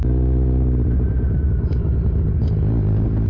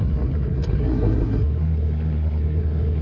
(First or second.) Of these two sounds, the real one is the first